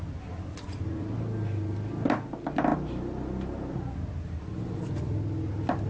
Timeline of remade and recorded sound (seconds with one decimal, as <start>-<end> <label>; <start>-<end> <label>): 0.0-5.9 recorded